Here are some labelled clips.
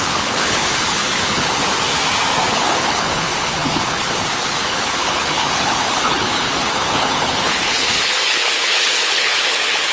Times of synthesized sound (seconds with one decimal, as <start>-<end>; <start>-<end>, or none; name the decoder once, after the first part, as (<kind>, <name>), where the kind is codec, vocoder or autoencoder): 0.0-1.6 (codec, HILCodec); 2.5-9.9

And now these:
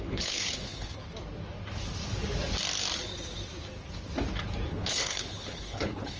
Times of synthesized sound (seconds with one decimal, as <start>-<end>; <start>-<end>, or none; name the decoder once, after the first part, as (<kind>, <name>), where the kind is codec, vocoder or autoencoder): 0.0-1.0 (codec, HILCodec); 4.7-6.2

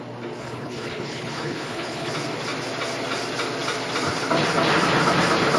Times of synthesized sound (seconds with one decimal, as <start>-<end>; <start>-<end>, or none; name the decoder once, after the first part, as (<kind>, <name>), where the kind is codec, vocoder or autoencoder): 0.4-2.1 (codec, HILCodec)

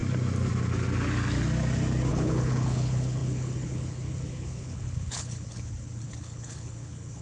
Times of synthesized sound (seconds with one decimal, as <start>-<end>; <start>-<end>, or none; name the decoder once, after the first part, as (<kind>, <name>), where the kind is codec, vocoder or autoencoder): 2.1-7.2 (codec, HILCodec)

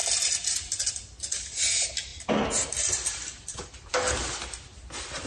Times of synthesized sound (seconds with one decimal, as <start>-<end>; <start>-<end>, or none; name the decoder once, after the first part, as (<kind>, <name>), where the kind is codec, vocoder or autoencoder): none

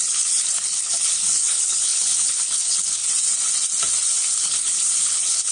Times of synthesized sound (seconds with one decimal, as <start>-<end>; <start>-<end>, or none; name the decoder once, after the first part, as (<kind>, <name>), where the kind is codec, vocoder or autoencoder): 0.0-3.0 (codec, HILCodec); 4.3-5.5

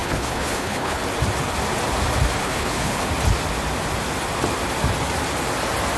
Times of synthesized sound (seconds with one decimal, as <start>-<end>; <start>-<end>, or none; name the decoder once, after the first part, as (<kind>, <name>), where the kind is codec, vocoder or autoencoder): 0.0-1.0 (codec, HILCodec); 2.4-3.0

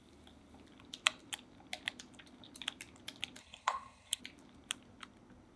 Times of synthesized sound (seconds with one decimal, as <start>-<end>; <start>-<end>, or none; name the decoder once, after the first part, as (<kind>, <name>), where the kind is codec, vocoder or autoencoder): 3.4-4.2 (codec, HILCodec)